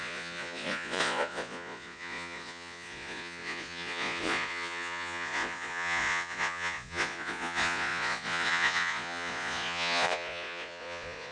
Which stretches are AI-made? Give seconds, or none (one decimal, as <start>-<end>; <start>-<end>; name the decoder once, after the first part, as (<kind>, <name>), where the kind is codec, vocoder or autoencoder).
0.0-11.3 (vocoder, Vocos)